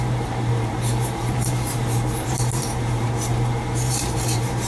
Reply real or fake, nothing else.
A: fake